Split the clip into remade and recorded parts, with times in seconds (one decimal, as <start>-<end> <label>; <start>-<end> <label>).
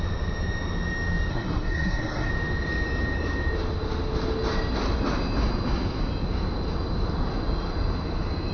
0.0-1.3 recorded; 1.3-2.3 remade; 2.3-8.5 recorded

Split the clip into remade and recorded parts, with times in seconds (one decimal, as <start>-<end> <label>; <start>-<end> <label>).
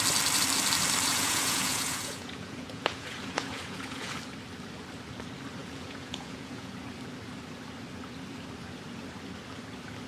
0.0-1.1 recorded; 1.1-4.1 remade; 4.1-5.6 recorded; 5.6-6.7 remade; 6.7-10.1 recorded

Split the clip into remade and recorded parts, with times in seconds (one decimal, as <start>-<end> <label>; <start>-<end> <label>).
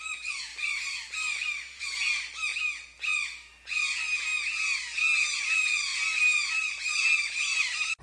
0.0-2.5 remade; 2.5-5.4 recorded; 5.4-5.9 remade; 5.9-6.5 recorded; 6.5-8.0 remade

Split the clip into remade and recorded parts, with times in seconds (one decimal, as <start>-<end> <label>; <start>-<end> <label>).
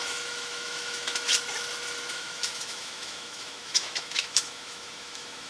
0.0-1.3 remade; 1.3-2.1 recorded; 2.1-5.5 remade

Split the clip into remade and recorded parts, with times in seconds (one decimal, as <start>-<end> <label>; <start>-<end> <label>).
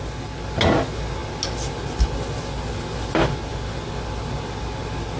0.0-5.2 recorded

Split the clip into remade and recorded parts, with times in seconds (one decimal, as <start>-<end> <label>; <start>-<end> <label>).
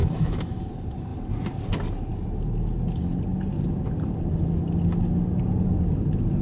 0.0-0.7 remade; 0.7-6.4 recorded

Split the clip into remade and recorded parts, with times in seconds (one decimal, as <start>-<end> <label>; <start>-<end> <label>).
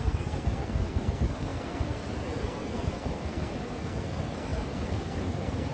0.0-5.7 remade